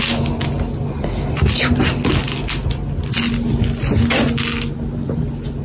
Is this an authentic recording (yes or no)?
yes